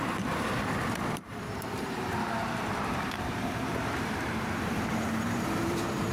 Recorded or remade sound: remade